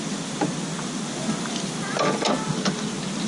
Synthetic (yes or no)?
no